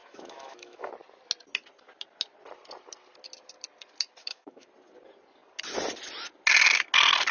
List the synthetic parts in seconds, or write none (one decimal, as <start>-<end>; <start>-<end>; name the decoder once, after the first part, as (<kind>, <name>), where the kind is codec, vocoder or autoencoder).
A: 0.0-0.9 (autoencoder, DAC-VAE); 4.2-4.7